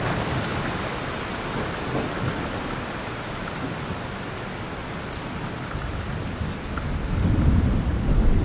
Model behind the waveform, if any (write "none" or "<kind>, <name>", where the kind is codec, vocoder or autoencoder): none